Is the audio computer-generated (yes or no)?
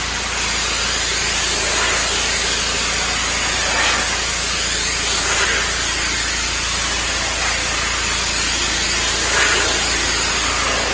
no